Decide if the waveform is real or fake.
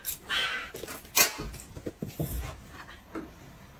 real